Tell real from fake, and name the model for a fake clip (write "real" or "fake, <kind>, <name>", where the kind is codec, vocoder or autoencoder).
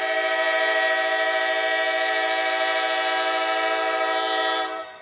real